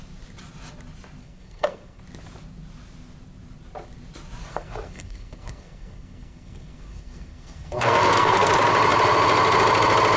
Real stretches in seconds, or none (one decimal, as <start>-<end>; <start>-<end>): 0.0-1.2; 2.0-4.4; 8.5-10.2